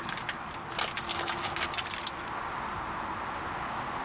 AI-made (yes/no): no